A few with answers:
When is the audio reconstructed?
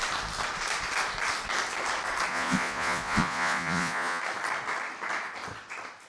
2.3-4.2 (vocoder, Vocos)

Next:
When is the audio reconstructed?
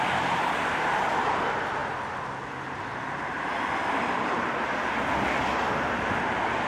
none